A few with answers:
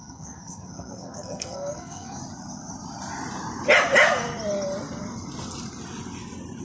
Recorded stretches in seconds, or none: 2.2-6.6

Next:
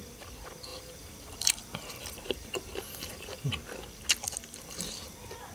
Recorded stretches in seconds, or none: 0.0-0.7; 3.5-5.5

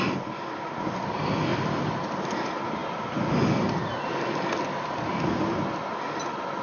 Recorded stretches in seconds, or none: 0.0-6.6

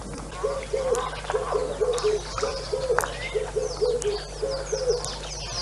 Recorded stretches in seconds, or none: 0.0-1.6; 3.1-5.6